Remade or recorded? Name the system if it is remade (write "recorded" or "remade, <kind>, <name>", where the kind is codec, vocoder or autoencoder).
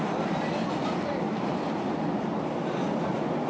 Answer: recorded